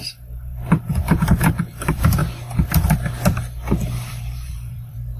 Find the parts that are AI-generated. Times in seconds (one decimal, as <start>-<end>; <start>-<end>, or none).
0.0-2.2; 4.1-5.2